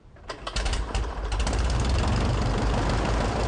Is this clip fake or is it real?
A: fake